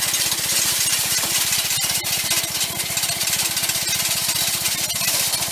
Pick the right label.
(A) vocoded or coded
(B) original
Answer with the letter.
B